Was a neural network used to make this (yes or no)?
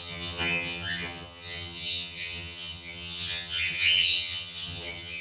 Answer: yes